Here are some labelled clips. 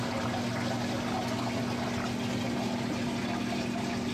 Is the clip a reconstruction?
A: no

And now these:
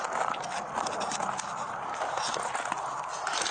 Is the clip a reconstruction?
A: no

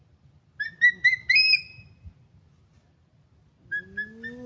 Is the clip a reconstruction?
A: no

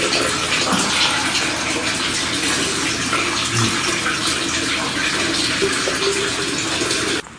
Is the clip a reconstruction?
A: no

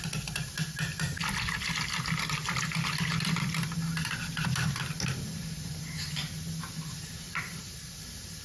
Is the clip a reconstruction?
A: no